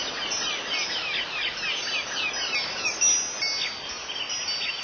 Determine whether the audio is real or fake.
real